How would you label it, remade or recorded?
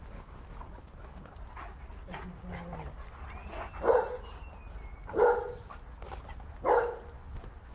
recorded